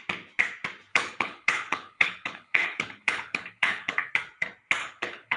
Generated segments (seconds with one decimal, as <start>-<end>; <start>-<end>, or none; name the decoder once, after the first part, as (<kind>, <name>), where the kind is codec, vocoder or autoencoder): 0.9-4.1 (codec, HILCodec); 4.8-5.4